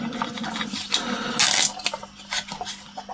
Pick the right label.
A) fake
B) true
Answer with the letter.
B